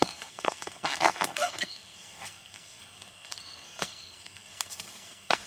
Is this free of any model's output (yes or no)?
no